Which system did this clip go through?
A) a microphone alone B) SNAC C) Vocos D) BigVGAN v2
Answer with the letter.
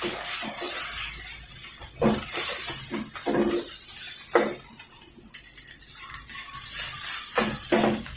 A